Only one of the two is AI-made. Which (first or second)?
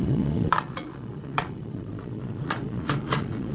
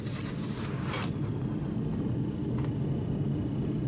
first